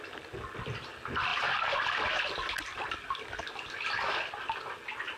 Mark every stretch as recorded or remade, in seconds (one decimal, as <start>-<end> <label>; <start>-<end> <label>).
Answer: 0.0-5.2 recorded